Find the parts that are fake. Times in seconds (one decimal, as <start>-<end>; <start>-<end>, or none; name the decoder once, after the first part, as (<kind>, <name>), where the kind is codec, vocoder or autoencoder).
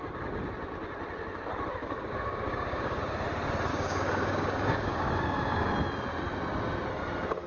1.8-3.0 (codec, DAC); 3.7-5.7